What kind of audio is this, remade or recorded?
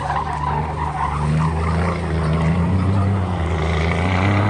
recorded